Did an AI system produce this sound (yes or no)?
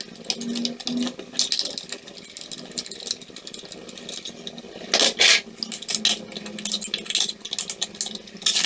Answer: no